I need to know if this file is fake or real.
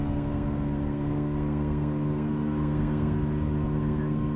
fake